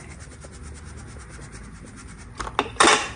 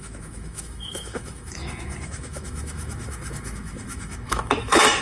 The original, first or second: first